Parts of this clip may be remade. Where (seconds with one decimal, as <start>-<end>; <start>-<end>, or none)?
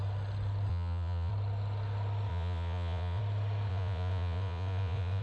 0.7-1.3; 2.3-3.2; 3.7-5.2